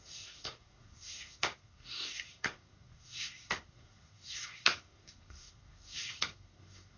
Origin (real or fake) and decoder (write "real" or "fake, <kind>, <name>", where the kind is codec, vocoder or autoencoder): fake, codec, SNAC